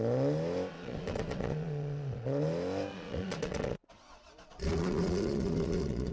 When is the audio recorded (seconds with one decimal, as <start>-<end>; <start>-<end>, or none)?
0.0-0.7; 2.4-2.9